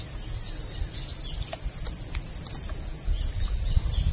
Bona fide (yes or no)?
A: yes